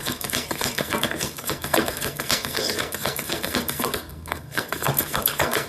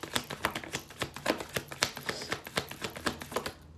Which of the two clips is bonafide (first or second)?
second